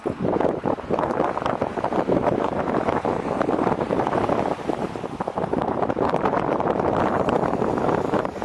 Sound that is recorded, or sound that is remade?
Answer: remade